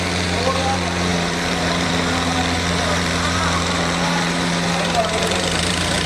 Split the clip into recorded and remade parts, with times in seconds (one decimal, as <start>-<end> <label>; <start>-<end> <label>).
0.0-6.1 remade